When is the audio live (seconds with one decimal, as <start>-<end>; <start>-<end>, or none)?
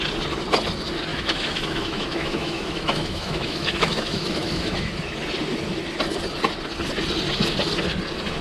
0.0-1.1; 4.9-8.4